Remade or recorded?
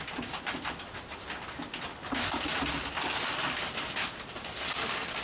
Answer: recorded